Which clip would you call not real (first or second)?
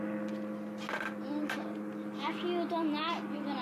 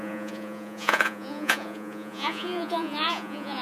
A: second